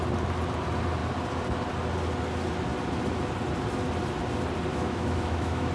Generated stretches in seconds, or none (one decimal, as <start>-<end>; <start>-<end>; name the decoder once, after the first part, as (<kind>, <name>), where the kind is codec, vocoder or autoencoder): 4.7-5.7 (autoencoder, DAC-VAE)